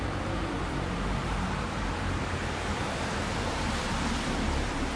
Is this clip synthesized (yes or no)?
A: yes